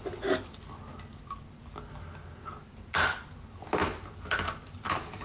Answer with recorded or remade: recorded